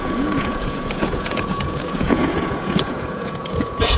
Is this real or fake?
fake